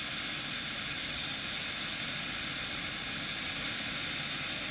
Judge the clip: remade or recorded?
recorded